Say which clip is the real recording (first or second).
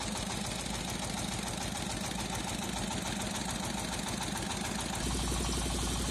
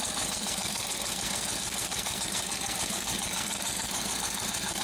first